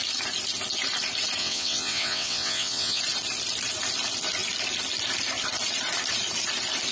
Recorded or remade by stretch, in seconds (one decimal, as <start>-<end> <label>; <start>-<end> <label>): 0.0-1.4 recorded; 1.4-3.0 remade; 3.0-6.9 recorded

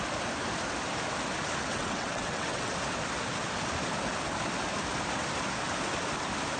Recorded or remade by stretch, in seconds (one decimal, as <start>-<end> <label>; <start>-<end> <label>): 0.0-1.7 recorded; 1.7-2.7 remade; 2.7-6.6 recorded

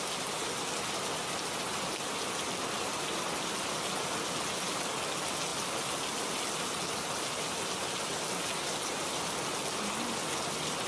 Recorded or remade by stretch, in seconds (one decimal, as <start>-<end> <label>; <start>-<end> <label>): 0.0-10.9 recorded